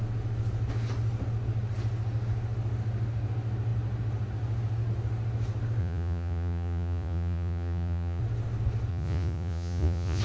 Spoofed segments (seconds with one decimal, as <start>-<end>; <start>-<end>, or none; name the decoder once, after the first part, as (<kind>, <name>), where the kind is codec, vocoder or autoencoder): 5.8-8.2 (vocoder, Vocos); 8.9-10.2